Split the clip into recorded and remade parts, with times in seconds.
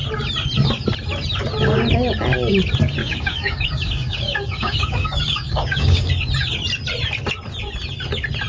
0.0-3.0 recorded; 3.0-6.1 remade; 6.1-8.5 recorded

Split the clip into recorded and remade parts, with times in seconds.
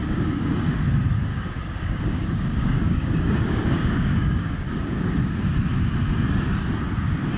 0.0-0.7 remade; 0.7-1.3 recorded; 1.3-5.2 remade; 5.2-7.4 recorded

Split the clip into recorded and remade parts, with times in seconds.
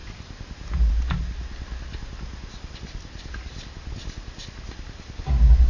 0.0-5.7 recorded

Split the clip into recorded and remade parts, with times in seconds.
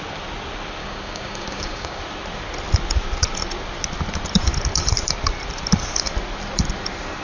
0.0-0.8 recorded; 0.8-2.0 remade; 2.0-7.2 recorded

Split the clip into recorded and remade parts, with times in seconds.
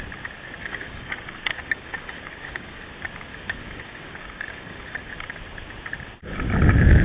0.0-0.6 recorded; 0.6-2.9 remade; 2.9-3.3 recorded; 3.3-5.1 remade; 5.1-7.0 recorded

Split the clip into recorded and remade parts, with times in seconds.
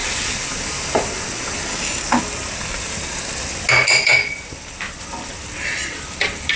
0.0-1.7 recorded; 1.7-2.2 remade; 2.2-6.6 recorded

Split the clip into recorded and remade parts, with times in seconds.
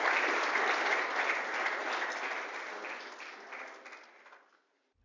0.0-5.0 recorded